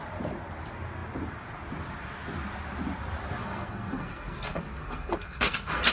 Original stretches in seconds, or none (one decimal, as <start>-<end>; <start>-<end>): 0.0-3.4